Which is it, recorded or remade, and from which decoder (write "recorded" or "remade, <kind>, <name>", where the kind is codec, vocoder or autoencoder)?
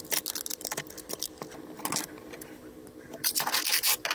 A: recorded